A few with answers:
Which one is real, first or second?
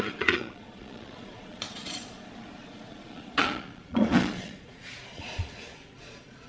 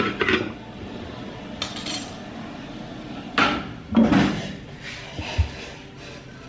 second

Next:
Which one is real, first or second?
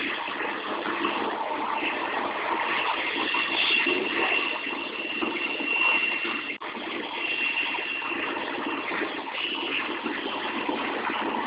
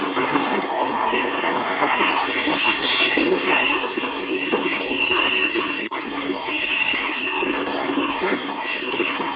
first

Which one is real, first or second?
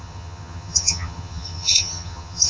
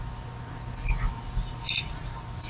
second